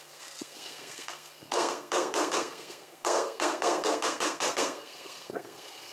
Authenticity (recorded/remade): remade